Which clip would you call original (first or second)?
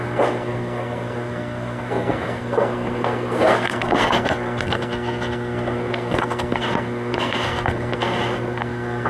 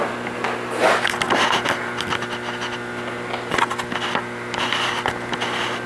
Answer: second